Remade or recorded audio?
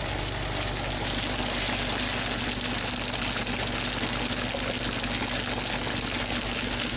recorded